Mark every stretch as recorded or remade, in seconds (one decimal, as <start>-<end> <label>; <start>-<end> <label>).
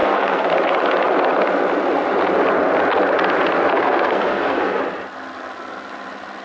0.0-0.5 remade; 0.5-3.7 recorded; 3.7-4.8 remade; 4.8-6.4 recorded